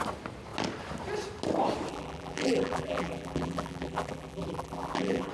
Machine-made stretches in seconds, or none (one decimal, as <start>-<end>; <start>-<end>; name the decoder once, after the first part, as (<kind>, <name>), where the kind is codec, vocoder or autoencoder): 1.9-5.3 (vocoder, BigVGAN v2)